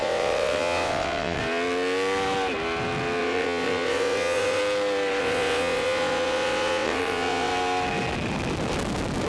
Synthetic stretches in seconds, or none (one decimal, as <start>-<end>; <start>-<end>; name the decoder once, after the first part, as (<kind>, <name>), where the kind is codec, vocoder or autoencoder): 0.0-1.4 (vocoder, WaveNeXt); 3.2-4.6; 5.2-7.5